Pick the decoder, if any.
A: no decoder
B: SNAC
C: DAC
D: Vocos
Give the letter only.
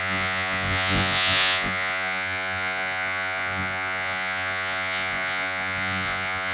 D